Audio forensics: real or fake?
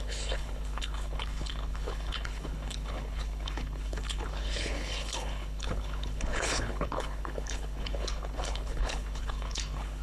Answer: fake